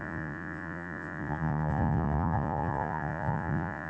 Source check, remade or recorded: remade